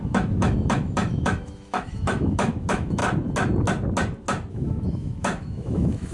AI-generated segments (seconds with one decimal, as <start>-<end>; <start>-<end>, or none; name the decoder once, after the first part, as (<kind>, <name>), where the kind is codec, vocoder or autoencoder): 0.0-3.0 (autoencoder, DAC-VAE); 4.5-6.1